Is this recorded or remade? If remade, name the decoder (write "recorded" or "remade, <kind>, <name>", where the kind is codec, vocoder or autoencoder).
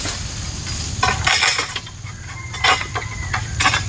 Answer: recorded